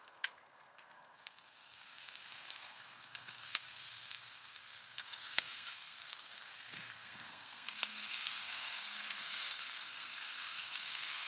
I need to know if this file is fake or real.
fake